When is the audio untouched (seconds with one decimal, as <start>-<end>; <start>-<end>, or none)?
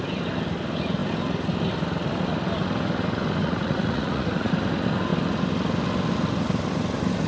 0.0-3.4; 4.5-7.3